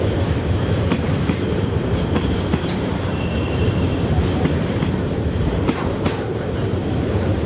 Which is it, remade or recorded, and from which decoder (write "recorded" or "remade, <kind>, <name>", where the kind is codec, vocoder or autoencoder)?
remade, vocoder, BigVGAN v2